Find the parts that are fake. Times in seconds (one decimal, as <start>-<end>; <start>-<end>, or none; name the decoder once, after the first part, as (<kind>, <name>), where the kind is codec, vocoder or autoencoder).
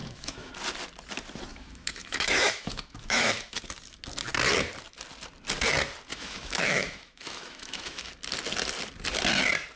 0.0-0.5 (autoencoder, DAC-VAE); 1.5-3.6; 6.1-8.1